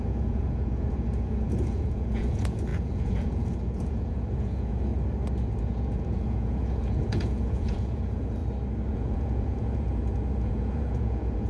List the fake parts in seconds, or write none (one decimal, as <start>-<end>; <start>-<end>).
0.0-4.9; 5.6-8.4; 8.9-11.5